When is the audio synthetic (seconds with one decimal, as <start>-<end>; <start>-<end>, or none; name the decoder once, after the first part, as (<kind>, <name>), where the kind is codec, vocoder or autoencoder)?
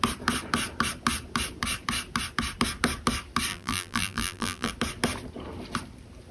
3.5-4.7 (vocoder, BigVGAN v2)